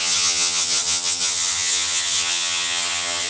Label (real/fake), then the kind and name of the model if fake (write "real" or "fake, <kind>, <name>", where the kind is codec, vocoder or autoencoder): fake, vocoder, HiFi-GAN